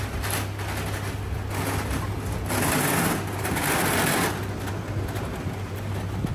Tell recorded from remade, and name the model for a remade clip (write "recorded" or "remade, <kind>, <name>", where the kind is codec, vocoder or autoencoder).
recorded